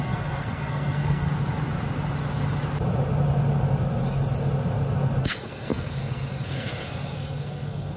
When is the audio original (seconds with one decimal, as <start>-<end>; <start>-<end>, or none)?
1.3-5.2